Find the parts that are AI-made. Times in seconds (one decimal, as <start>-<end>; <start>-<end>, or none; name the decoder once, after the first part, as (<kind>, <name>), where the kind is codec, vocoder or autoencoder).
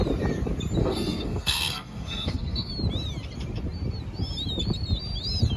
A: 0.8-2.7 (codec, SNAC)